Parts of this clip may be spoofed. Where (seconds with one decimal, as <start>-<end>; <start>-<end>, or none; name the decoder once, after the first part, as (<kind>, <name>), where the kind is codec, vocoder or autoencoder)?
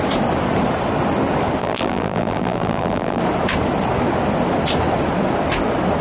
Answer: 1.6-3.2 (vocoder, BigVGAN v2)